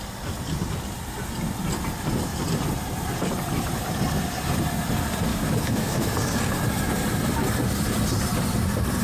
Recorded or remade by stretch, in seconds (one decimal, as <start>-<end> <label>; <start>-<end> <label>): 0.0-5.3 recorded; 5.3-6.1 remade; 6.1-9.0 recorded